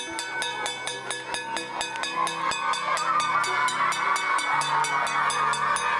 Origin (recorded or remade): recorded